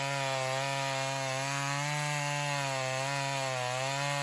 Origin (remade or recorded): recorded